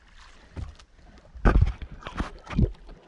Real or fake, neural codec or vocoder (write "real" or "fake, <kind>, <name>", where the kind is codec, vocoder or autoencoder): real